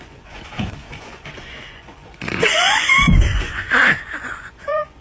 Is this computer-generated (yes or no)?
yes